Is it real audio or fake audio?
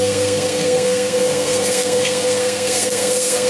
fake